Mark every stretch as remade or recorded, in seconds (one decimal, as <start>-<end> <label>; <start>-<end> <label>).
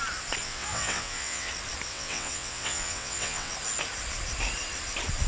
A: 0.0-0.4 recorded; 0.4-1.5 remade; 1.5-1.9 recorded; 1.9-3.5 remade; 3.5-5.3 recorded